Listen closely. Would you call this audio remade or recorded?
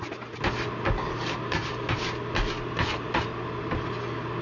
recorded